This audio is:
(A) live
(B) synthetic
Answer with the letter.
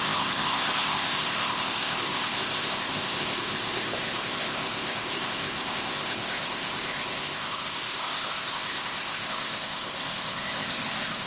B